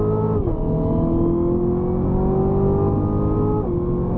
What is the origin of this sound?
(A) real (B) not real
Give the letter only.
A